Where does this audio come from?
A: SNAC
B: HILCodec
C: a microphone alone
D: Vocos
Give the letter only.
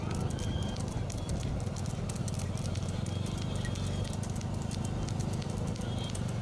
C